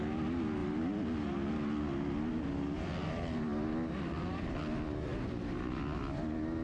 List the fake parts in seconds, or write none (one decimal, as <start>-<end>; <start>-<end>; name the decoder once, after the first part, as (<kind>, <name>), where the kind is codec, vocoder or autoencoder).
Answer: none